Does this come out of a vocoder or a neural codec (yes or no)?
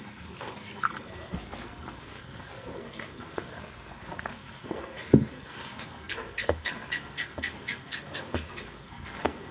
yes